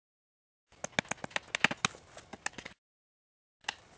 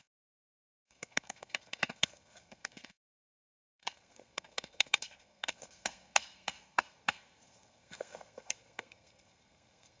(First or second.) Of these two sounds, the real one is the first